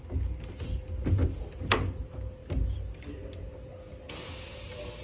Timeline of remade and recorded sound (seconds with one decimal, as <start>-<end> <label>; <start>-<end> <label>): 0.0-5.0 recorded